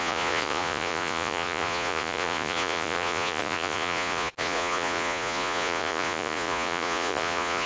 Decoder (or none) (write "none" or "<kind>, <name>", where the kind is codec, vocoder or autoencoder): vocoder, Vocos